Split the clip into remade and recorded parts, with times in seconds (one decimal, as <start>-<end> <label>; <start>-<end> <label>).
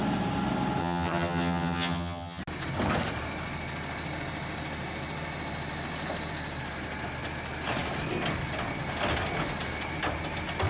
0.0-0.8 recorded; 0.8-2.4 remade; 2.4-10.7 recorded